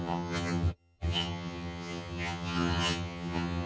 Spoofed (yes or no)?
yes